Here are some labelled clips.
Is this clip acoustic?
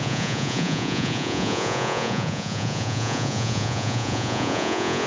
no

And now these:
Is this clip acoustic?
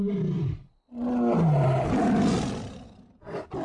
yes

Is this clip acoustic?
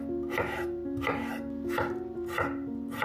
yes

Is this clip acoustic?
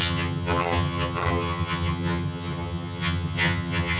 no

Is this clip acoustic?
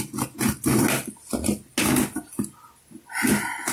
yes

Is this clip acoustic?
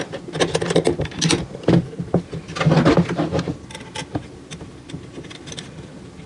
yes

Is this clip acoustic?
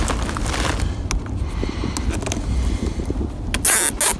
yes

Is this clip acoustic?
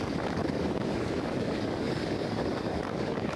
no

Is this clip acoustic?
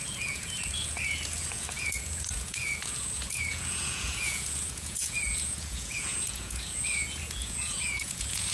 no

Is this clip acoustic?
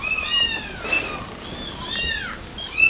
yes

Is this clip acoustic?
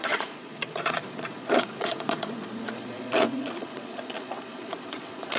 no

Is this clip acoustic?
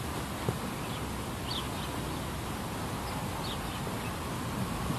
yes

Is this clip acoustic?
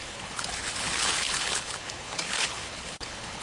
no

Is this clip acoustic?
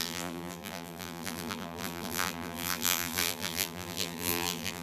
no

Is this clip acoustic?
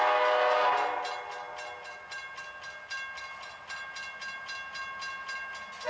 yes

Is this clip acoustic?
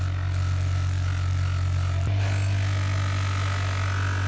yes